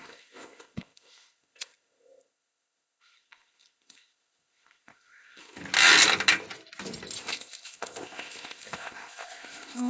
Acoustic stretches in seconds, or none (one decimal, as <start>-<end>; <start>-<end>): 5.6-7.2